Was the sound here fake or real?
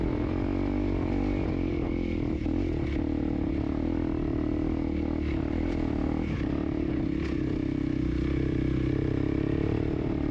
real